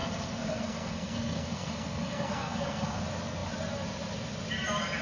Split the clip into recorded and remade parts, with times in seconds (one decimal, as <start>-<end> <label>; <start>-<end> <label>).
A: 0.0-3.0 remade; 3.0-5.0 recorded